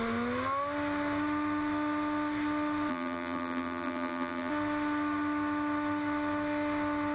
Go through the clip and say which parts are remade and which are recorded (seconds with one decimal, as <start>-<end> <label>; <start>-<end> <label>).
0.0-2.9 recorded; 2.9-4.5 remade; 4.5-7.1 recorded

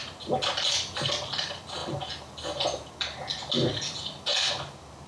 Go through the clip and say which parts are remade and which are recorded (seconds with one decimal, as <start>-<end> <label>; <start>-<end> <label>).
0.0-5.1 recorded

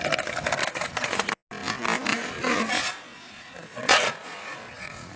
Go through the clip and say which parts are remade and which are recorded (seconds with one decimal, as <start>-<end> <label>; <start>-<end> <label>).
0.0-0.6 recorded; 0.6-1.3 remade; 1.3-2.1 recorded; 2.1-5.2 remade